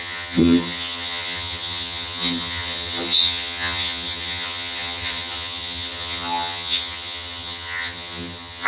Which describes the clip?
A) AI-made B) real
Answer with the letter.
A